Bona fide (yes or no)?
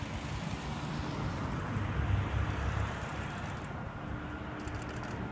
yes